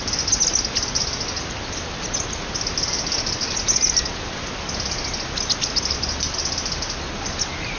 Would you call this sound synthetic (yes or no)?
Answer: no